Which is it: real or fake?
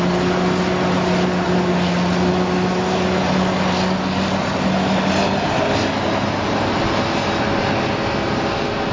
real